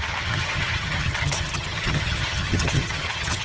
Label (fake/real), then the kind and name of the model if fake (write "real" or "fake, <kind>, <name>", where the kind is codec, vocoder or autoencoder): fake, vocoder, HiFi-GAN